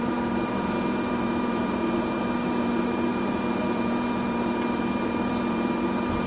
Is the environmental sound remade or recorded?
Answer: remade